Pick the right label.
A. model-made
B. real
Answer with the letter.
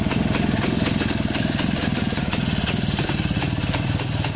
A